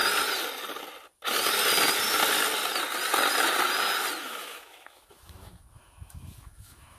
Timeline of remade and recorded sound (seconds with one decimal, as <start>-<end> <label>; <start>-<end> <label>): 0.0-4.2 recorded; 4.2-7.0 remade